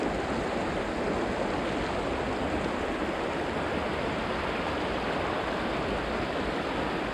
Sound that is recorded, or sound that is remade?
recorded